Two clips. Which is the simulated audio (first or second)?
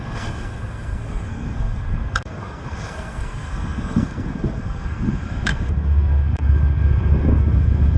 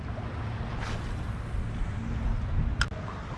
first